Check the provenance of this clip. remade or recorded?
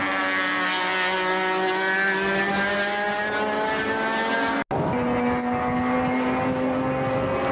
recorded